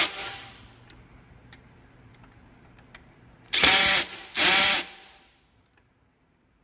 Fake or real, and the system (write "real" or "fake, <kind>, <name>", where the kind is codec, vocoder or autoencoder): fake, vocoder, BigVGAN v2